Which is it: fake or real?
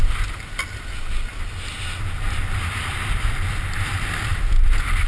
real